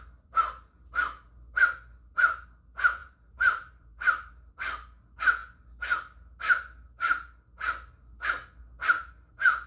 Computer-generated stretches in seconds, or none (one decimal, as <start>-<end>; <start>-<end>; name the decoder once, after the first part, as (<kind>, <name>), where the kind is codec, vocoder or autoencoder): 3.0-4.5 (vocoder, BigVGAN v2)